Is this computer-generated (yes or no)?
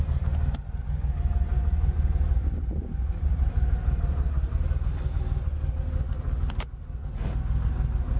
no